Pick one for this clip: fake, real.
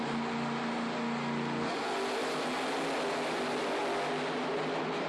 real